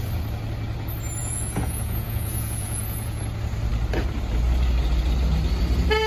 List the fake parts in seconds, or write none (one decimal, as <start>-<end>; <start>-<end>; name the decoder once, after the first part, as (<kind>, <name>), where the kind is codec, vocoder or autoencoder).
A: 1.2-3.2 (vocoder, Vocos)